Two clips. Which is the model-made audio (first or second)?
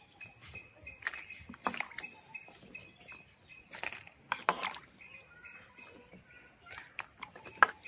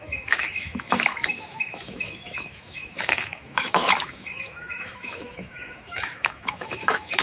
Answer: second